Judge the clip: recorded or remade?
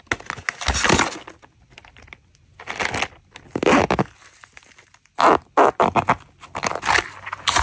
recorded